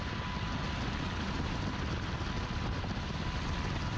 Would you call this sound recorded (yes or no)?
yes